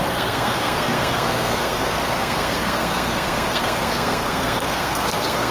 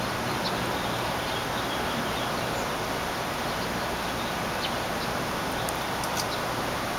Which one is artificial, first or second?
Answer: first